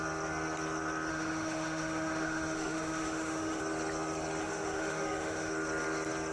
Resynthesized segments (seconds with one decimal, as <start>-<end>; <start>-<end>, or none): 1.1-3.6; 4.4-5.5